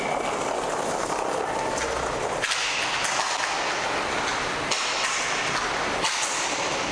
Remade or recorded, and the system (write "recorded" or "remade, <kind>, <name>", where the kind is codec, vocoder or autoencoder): recorded